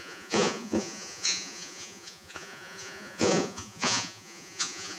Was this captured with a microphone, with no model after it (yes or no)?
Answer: no